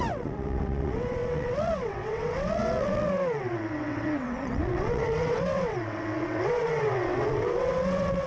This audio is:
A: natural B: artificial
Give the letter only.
B